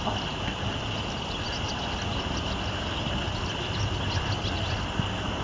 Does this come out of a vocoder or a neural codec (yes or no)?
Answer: no